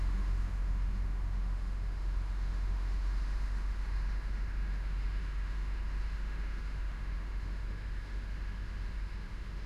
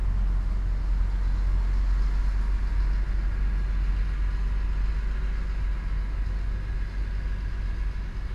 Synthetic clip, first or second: first